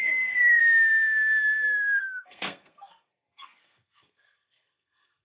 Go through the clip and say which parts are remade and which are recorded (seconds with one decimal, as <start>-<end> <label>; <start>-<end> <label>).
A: 0.0-0.6 remade; 0.6-1.8 recorded; 1.8-5.2 remade